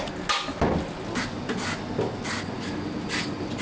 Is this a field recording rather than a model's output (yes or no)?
yes